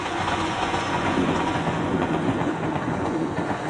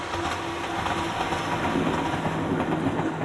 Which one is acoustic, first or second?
second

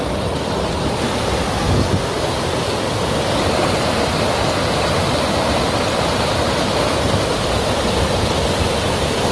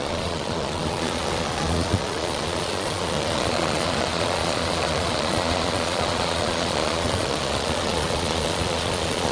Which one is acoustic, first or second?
first